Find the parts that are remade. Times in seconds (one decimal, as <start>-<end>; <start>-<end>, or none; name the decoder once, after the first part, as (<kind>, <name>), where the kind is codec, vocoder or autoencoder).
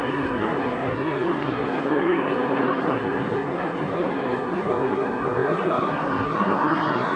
0.0-7.2 (codec, SNAC)